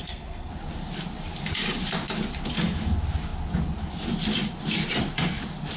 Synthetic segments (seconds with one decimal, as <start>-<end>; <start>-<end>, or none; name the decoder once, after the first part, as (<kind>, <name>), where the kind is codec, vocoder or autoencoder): 0.0-0.5 (codec, SNAC)